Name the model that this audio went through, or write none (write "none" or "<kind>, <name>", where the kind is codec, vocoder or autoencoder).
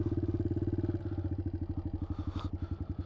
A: none